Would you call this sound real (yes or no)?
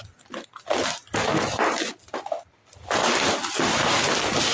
yes